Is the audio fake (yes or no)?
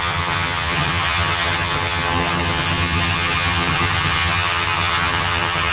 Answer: yes